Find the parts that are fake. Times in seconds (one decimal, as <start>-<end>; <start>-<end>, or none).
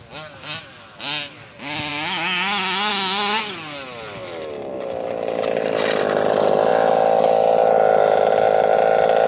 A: none